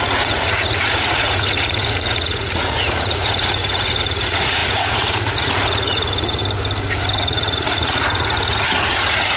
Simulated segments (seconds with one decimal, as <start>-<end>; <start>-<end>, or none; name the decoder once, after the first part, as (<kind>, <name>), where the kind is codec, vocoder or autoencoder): 0.0-6.4 (vocoder, Vocos); 7.2-9.4

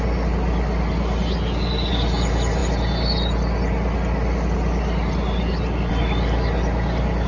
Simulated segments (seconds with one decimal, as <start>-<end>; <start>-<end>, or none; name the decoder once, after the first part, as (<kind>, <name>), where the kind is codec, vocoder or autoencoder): none

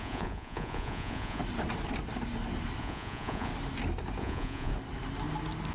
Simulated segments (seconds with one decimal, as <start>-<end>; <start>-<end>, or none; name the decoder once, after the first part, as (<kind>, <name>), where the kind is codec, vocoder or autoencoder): 0.0-1.4 (vocoder, Vocos); 2.8-3.5; 4.2-4.7

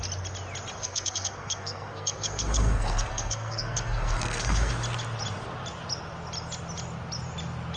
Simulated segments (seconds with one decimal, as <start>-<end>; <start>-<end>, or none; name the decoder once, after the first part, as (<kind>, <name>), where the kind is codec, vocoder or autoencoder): 0.8-4.7 (codec, SNAC)